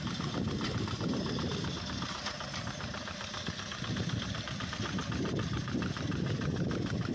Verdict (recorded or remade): remade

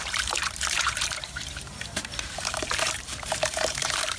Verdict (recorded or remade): remade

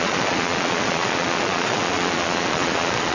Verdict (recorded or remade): remade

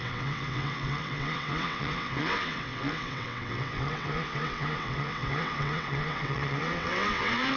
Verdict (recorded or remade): remade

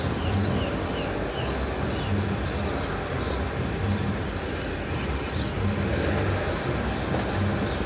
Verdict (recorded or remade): recorded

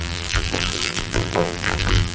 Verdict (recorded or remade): remade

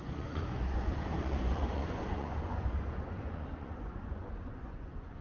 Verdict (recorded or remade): remade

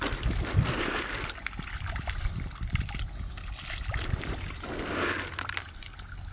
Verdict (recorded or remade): recorded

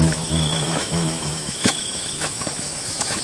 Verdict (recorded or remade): remade